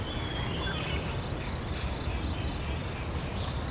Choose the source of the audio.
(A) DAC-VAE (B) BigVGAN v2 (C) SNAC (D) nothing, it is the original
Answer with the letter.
D